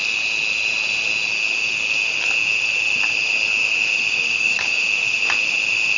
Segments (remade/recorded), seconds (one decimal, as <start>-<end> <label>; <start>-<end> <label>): 0.0-4.2 recorded; 4.2-4.8 remade; 4.8-6.0 recorded